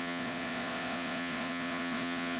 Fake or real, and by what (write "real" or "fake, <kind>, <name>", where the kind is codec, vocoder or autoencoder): fake, vocoder, Vocos